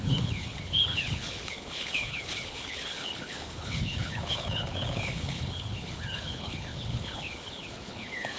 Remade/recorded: remade